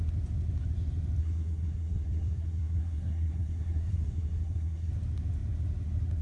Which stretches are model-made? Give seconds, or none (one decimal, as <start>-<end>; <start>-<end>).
1.2-4.9